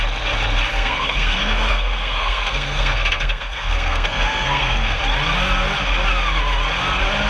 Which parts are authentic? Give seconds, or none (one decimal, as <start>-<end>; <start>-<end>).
0.0-0.7; 5.0-7.3